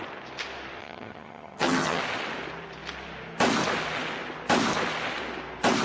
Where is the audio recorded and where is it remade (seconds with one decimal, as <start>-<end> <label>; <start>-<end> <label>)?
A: 0.0-0.8 recorded; 0.8-2.0 remade; 2.0-5.8 recorded